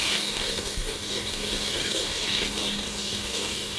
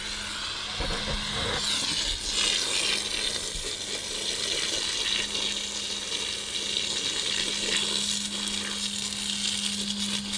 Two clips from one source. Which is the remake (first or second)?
first